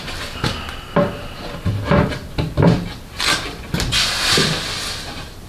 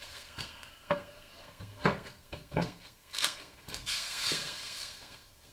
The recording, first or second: first